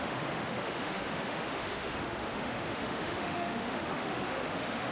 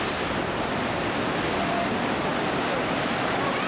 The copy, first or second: first